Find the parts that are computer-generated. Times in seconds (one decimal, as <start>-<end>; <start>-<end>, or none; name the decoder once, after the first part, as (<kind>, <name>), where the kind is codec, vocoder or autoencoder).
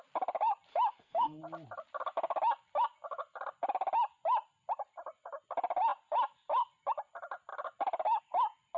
0.7-1.4 (autoencoder, DAC-VAE)